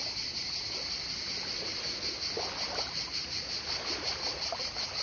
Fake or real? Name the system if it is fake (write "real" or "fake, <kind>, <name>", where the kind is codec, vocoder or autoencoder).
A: real